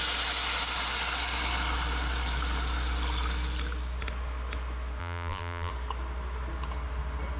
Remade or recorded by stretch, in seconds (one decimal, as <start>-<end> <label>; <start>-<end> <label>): 0.0-5.0 recorded; 5.0-5.7 remade; 5.7-7.4 recorded